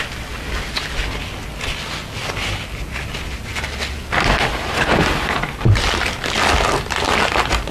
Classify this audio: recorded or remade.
recorded